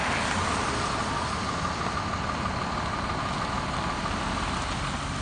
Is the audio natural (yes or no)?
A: yes